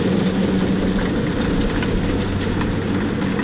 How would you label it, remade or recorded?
recorded